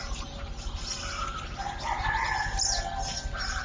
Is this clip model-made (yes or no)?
no